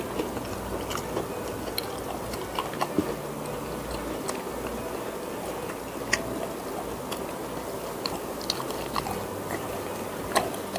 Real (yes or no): yes